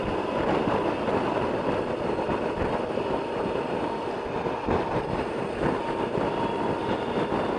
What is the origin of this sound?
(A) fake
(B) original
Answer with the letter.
B